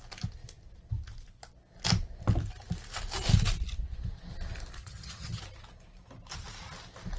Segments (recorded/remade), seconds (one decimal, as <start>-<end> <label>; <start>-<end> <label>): 0.0-4.8 recorded; 4.8-5.4 remade; 5.4-7.2 recorded